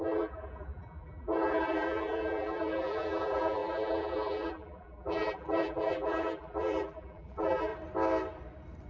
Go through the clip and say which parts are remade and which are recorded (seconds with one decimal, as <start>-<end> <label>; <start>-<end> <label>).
0.0-7.7 remade; 7.7-8.9 recorded